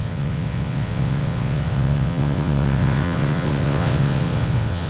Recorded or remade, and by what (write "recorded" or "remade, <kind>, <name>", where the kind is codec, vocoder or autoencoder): remade, vocoder, WaveNeXt